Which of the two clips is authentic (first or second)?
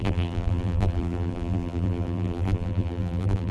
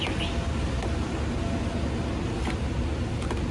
second